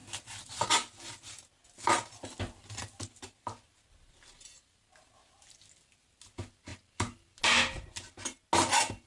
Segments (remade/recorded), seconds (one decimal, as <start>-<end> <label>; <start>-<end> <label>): 0.0-9.1 recorded